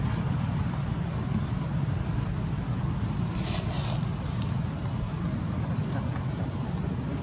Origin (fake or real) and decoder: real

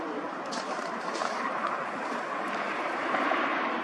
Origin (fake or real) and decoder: fake, vocoder, BigVGAN v2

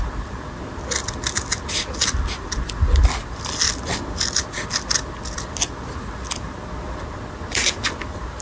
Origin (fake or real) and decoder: real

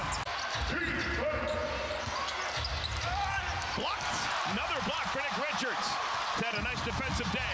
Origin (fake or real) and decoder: real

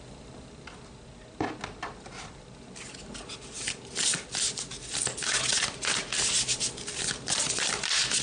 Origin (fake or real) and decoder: real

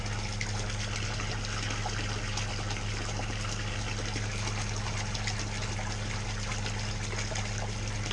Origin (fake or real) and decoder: real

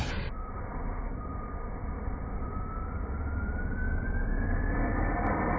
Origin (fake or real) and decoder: fake, vocoder, BigVGAN v2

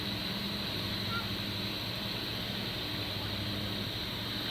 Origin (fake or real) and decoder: real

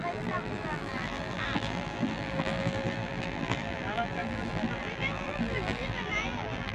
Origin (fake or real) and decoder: fake, vocoder, BigVGAN v2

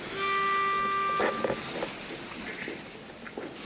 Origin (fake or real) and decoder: real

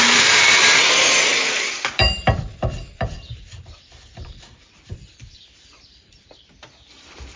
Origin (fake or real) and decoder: fake, vocoder, BigVGAN v2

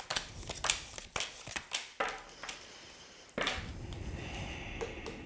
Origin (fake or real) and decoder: real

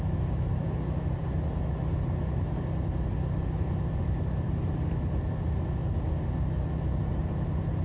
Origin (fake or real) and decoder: real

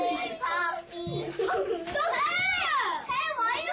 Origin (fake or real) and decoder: real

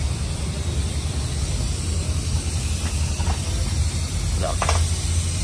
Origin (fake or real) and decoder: real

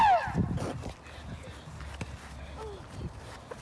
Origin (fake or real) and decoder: real